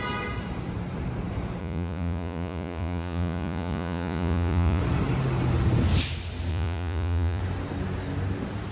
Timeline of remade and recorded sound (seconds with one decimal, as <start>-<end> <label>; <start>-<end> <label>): 0.0-1.6 recorded; 1.6-4.8 remade; 4.8-6.5 recorded; 6.5-7.4 remade; 7.4-8.7 recorded